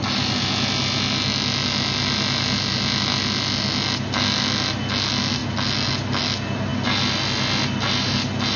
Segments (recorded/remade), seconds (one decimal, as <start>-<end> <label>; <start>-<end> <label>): 0.0-8.6 recorded